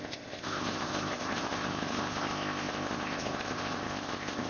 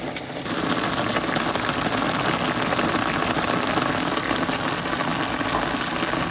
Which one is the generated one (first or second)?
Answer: first